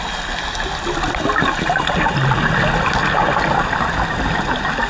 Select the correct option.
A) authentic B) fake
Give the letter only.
A